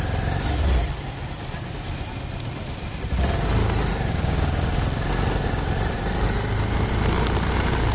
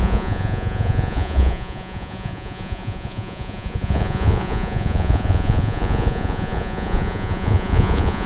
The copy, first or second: second